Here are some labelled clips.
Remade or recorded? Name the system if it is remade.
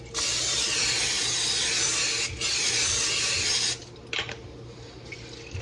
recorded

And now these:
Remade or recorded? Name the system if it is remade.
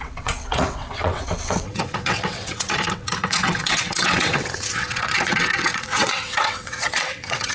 remade, vocoder, WaveNeXt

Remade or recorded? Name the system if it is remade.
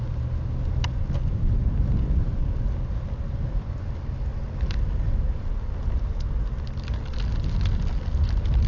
recorded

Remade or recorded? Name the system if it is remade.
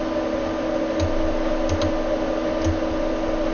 recorded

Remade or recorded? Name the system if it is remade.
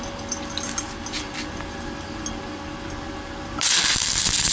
recorded